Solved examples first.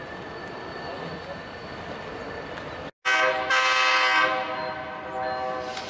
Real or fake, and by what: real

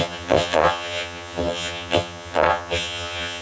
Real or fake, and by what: fake, vocoder, HiFi-GAN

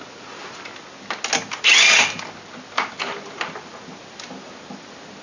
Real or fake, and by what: real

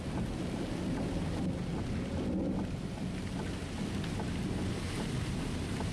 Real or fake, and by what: real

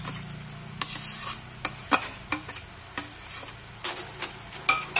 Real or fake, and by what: real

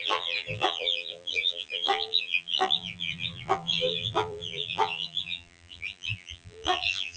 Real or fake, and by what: fake, vocoder, BigVGAN v2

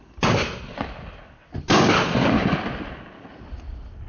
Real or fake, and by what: real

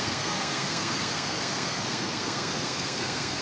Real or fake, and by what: fake, codec, SNAC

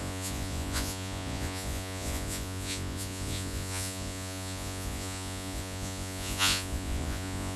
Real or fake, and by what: fake, vocoder, Vocos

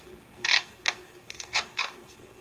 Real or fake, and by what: fake, codec, SNAC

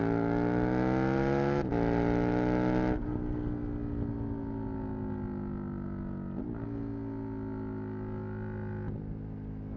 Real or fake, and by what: real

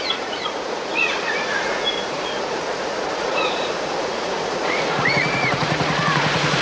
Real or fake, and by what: fake, vocoder, Vocos